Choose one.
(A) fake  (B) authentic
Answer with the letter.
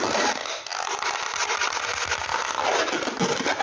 B